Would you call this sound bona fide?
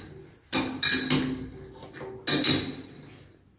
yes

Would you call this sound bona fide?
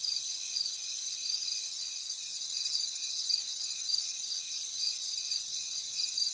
no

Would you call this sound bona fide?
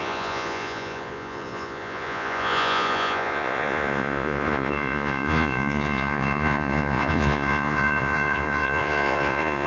no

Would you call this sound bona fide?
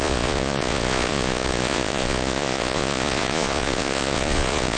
no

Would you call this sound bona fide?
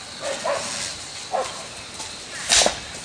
yes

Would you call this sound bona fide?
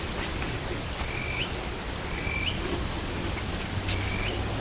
yes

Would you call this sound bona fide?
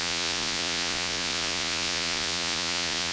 no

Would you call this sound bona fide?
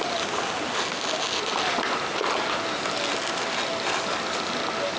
yes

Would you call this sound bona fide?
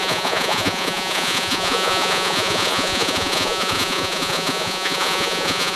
no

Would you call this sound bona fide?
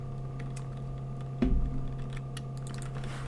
yes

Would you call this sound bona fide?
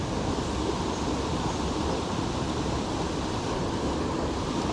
yes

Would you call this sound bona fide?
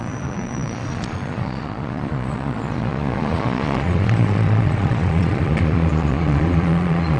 no